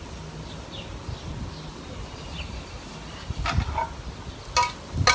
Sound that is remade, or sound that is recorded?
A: recorded